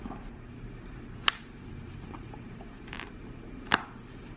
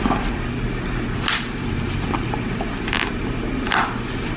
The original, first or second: second